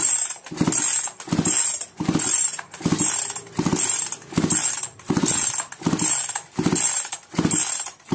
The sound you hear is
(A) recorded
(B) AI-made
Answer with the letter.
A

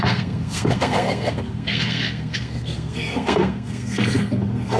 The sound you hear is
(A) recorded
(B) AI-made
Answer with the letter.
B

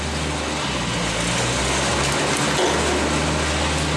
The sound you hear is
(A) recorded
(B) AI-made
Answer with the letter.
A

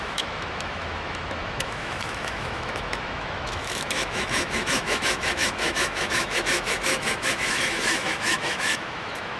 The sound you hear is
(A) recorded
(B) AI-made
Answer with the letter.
B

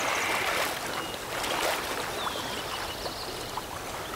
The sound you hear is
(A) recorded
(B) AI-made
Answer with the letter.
A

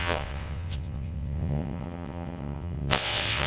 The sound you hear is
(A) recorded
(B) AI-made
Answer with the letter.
B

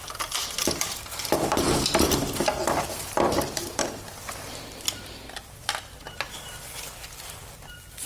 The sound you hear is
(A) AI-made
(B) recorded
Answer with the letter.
A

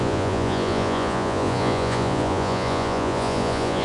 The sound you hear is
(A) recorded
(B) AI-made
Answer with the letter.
B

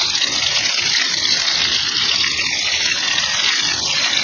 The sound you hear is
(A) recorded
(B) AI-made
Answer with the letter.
A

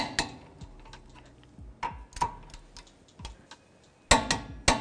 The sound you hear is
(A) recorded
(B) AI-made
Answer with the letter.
A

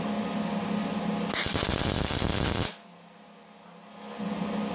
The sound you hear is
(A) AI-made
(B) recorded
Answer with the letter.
B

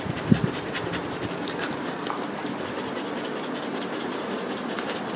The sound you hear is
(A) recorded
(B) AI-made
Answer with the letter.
A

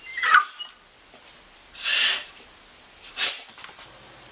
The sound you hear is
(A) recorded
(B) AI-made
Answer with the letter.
A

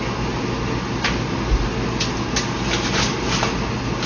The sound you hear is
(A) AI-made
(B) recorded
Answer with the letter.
B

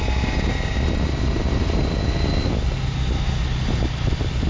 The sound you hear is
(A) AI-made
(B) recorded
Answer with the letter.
B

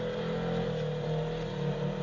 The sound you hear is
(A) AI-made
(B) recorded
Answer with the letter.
B